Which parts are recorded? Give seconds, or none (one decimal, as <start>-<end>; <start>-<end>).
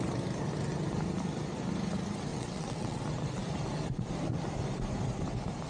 0.0-2.3; 3.0-5.7